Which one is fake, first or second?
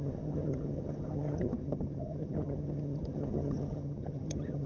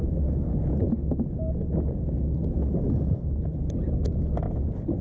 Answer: first